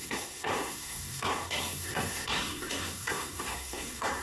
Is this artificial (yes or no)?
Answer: yes